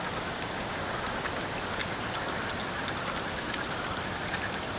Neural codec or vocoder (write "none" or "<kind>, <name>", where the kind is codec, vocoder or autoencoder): none